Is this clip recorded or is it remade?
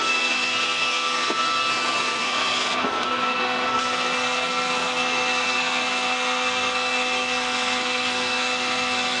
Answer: remade